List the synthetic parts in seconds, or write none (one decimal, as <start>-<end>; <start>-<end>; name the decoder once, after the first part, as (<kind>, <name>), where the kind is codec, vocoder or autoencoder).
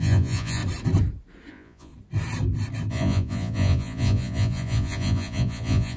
0.0-0.6 (vocoder, Vocos); 1.5-1.9; 2.9-6.0